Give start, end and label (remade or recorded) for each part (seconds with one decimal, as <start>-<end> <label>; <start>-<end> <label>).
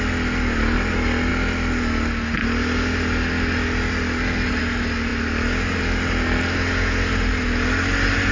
0.0-8.3 recorded